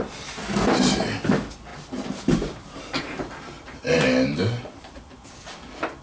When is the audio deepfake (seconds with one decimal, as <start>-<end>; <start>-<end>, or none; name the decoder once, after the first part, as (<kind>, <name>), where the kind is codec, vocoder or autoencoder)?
1.7-5.3 (vocoder, BigVGAN v2)